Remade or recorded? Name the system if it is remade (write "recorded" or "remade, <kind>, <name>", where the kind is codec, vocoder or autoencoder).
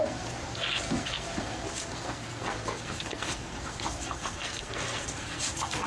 remade, codec, SNAC